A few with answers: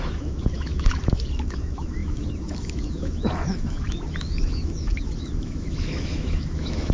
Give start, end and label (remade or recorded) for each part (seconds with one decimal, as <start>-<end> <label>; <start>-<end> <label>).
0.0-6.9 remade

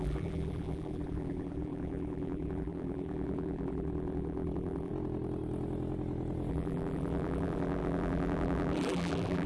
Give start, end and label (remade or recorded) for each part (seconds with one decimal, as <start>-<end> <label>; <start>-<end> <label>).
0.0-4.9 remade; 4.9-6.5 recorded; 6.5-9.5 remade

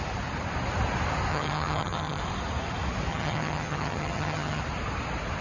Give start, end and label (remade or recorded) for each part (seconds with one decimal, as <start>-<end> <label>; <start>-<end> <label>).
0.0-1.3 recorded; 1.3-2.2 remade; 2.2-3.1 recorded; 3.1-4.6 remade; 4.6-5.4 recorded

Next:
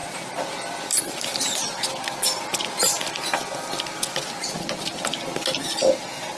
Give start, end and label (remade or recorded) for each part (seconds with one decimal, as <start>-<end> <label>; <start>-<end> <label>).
0.0-1.3 remade; 1.3-6.4 recorded

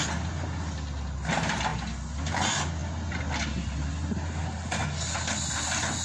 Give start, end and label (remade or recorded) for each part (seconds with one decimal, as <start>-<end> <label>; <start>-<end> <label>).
0.0-6.0 recorded

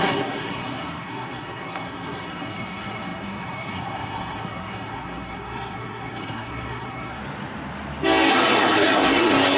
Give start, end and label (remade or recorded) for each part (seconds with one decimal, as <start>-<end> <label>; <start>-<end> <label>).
0.0-7.2 remade; 7.2-8.3 recorded; 8.3-9.6 remade